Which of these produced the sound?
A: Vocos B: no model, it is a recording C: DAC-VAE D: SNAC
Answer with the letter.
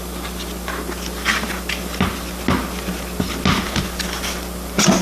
B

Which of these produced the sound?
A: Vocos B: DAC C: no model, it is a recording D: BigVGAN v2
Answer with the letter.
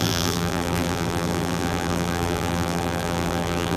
D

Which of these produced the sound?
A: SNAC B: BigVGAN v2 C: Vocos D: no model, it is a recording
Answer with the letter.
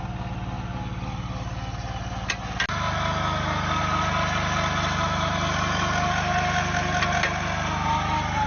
D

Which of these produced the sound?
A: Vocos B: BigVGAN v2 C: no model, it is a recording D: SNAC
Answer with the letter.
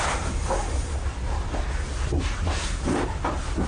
C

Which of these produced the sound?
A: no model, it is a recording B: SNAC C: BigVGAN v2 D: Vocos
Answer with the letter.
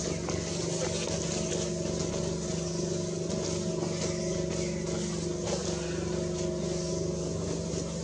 A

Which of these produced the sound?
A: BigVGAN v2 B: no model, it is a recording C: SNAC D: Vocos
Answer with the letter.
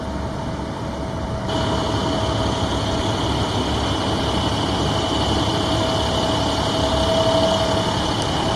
B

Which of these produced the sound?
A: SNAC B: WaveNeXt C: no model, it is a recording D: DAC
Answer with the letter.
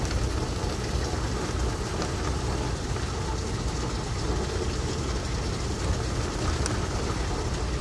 C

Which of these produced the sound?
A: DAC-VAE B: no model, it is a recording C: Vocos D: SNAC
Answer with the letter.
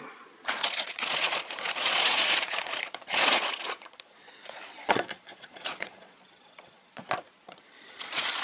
C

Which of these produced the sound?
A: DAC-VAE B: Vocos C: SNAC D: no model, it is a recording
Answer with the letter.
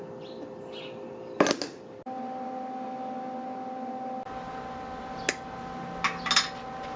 D